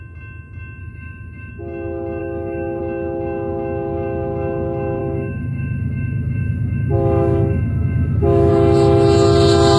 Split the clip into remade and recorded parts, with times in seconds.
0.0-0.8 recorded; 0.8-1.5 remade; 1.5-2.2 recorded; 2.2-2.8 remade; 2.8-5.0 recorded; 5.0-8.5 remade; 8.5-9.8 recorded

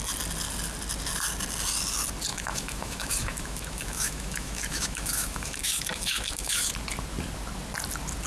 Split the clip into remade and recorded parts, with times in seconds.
0.0-2.3 recorded; 2.3-6.7 remade; 6.7-8.3 recorded

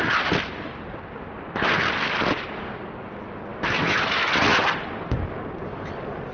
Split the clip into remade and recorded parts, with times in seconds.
0.0-3.5 recorded; 3.5-4.3 remade; 4.3-6.3 recorded

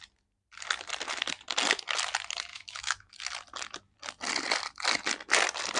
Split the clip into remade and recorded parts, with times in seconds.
0.0-2.5 recorded; 2.5-3.1 remade; 3.1-5.8 recorded